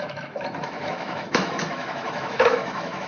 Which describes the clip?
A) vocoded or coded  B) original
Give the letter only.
A